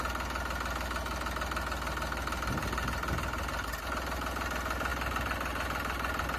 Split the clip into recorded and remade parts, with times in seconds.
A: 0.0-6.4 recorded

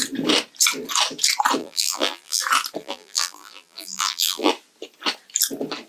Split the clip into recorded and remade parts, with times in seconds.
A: 0.0-1.6 recorded; 1.6-2.4 remade; 2.4-2.8 recorded; 2.8-4.5 remade; 4.5-5.9 recorded

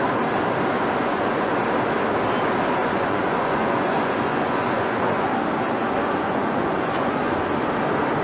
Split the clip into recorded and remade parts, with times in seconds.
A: 0.0-1.0 recorded; 1.0-1.5 remade; 1.5-2.8 recorded; 2.8-5.3 remade; 5.3-5.8 recorded; 5.8-7.4 remade; 7.4-8.2 recorded

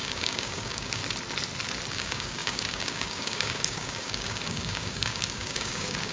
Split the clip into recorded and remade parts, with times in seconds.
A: 0.0-1.0 remade; 1.0-1.9 recorded; 1.9-6.1 remade